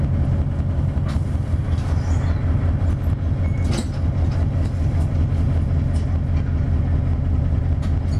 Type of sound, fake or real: real